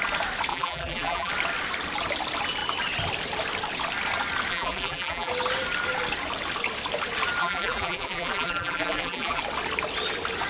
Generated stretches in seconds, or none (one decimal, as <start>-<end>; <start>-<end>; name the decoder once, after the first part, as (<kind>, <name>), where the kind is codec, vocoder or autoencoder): 0.5-1.3 (vocoder, BigVGAN v2); 4.5-5.3; 7.4-9.4